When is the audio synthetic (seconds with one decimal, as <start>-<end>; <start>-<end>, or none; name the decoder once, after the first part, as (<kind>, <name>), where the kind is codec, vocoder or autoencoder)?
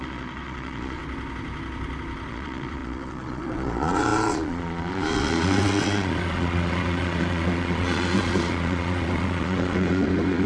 0.0-1.0 (vocoder, Vocos); 2.3-10.5